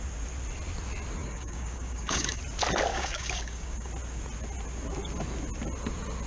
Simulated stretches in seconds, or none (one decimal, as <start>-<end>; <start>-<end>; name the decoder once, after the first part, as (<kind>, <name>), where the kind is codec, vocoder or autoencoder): 1.2-2.4 (codec, DAC); 2.9-3.9